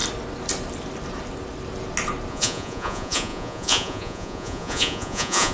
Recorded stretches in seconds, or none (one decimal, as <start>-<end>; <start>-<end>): 0.0-2.3